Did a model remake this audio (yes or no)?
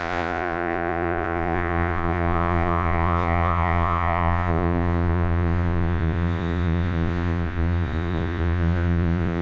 yes